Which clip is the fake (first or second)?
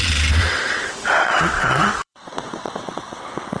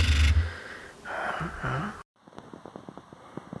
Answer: first